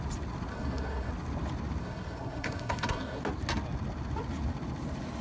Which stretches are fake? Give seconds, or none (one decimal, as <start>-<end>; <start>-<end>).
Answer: 0.5-1.1; 1.8-3.2